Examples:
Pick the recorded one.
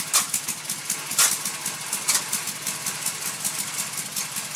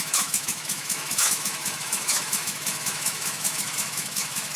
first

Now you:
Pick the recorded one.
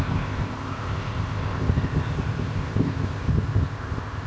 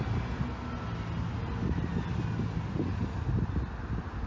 second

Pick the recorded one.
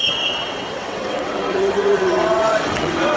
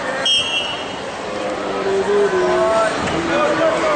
second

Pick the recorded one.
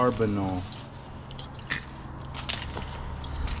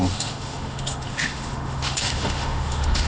first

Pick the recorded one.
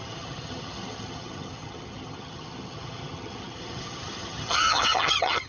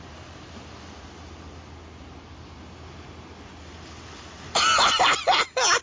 second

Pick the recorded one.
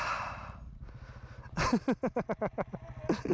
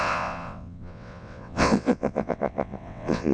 first